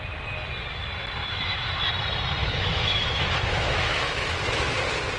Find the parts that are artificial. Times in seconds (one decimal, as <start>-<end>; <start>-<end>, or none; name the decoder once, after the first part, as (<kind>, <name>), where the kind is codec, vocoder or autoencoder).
1.2-1.9 (autoencoder, DAC-VAE); 2.4-4.6